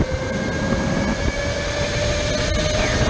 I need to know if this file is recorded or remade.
recorded